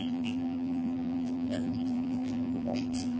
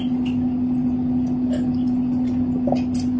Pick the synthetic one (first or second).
first